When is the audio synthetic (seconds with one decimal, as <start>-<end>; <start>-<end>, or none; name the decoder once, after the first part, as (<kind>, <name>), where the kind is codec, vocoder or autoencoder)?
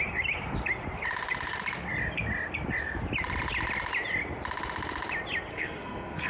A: 5.5-6.3 (codec, SNAC)